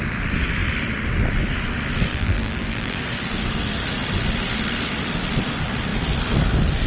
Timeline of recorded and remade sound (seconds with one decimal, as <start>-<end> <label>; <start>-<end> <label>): 0.0-2.1 recorded; 2.1-3.0 remade; 3.0-6.9 recorded